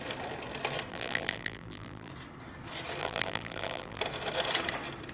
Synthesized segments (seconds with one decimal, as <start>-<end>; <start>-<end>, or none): 0.9-2.1; 3.0-4.0